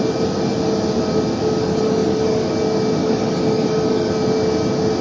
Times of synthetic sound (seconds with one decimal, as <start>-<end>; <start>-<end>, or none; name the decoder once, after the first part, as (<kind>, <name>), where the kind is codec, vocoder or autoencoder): 1.6-2.5 (codec, DAC); 3.0-4.1